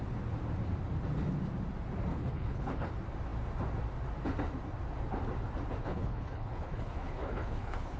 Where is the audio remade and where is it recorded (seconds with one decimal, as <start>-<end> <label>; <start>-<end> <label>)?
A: 0.0-2.1 recorded; 2.1-2.9 remade; 2.9-5.8 recorded; 5.8-8.0 remade

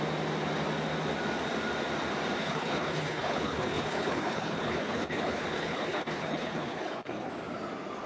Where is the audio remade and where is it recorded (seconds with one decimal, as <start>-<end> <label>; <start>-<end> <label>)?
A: 0.0-2.4 recorded; 2.4-7.3 remade; 7.3-8.1 recorded

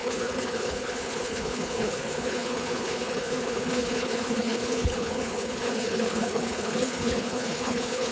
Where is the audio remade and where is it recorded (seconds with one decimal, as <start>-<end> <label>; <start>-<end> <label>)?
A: 0.0-8.1 remade

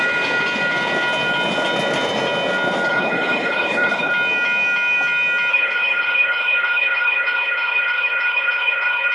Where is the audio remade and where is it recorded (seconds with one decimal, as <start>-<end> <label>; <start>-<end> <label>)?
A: 0.0-2.9 recorded; 2.9-4.1 remade; 4.1-5.5 recorded; 5.5-9.1 remade

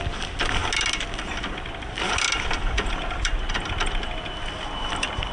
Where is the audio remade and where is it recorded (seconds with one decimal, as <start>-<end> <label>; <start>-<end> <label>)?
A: 0.0-5.3 recorded

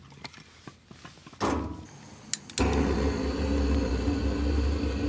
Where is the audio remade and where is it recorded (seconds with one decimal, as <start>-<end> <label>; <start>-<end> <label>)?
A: 0.0-5.1 recorded

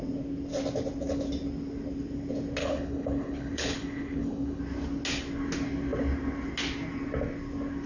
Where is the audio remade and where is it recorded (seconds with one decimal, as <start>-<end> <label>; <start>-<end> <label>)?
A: 0.0-2.6 recorded; 2.6-4.6 remade; 4.6-7.9 recorded

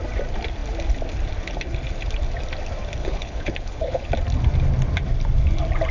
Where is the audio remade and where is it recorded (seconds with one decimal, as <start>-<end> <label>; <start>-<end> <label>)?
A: 0.0-3.0 recorded; 3.0-4.1 remade; 4.1-5.9 recorded